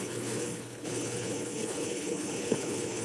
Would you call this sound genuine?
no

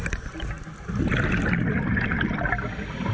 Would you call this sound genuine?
yes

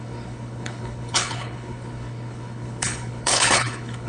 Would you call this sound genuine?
no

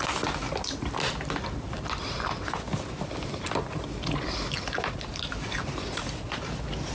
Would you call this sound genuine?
yes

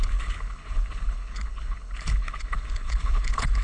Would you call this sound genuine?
no